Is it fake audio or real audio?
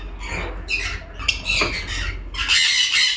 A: real